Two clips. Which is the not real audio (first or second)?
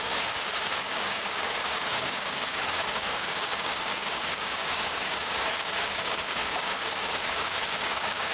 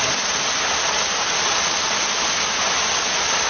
first